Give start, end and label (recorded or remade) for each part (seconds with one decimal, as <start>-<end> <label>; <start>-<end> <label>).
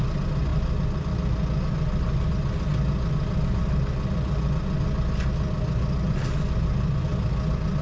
0.0-7.8 recorded